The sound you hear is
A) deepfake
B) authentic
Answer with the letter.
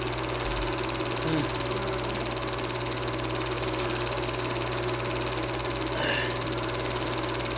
B